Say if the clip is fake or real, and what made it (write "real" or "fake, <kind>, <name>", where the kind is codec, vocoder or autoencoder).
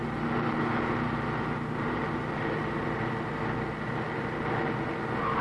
real